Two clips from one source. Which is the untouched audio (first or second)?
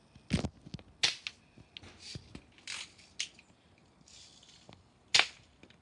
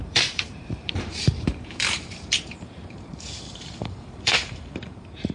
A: first